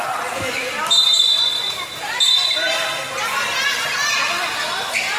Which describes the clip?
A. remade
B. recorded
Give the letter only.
B